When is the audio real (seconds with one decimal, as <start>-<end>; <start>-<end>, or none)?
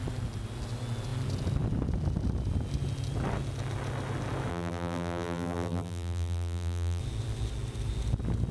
0.0-4.5; 7.0-8.5